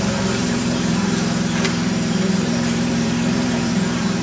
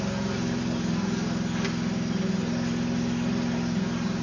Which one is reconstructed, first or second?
first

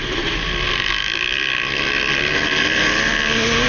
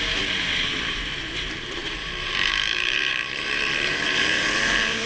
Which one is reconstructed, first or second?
second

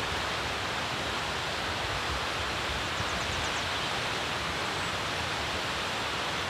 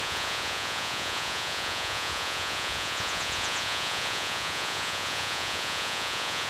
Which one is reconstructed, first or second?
second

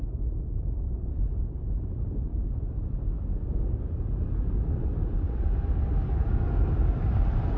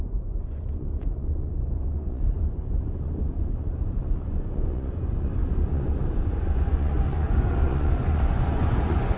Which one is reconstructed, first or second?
second